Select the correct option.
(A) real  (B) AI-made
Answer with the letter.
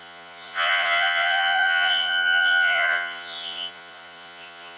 B